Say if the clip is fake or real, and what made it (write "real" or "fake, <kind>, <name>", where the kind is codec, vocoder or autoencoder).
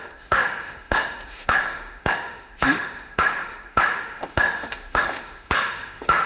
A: fake, autoencoder, DAC-VAE